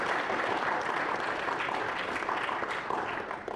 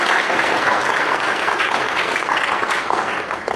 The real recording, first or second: first